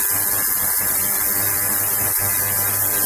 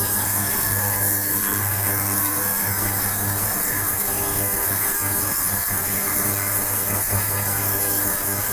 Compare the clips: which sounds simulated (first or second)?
second